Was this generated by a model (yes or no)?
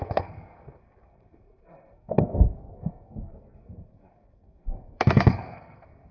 yes